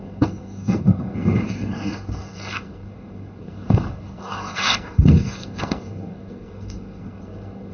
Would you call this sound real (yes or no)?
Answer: no